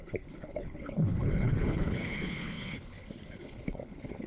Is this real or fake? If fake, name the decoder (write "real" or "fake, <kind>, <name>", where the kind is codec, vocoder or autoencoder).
fake, codec, HILCodec